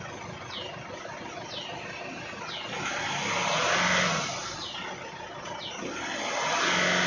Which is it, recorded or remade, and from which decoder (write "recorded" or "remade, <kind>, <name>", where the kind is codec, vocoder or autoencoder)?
recorded